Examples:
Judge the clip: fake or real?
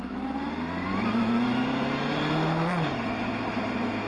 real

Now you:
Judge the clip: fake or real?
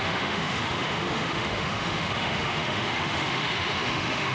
fake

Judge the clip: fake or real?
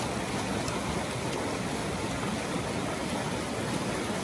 real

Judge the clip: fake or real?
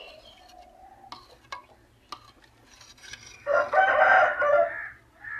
real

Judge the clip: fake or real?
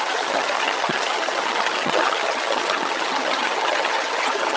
fake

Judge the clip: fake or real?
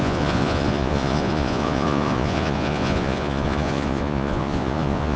fake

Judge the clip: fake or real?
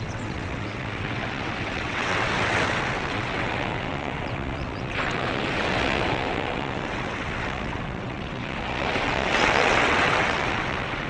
fake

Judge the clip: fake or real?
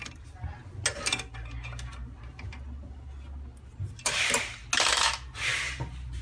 real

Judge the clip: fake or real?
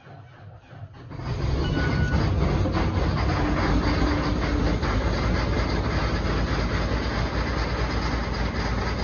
real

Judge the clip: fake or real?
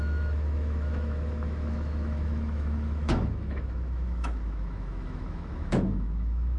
fake